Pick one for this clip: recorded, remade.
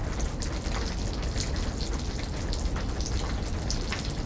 recorded